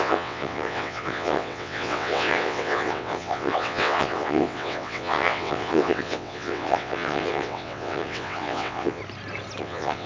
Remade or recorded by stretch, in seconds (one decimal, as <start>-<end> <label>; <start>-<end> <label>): 0.0-9.0 remade; 9.0-9.6 recorded; 9.6-10.1 remade